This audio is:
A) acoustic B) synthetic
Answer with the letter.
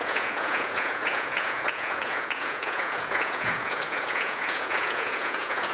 B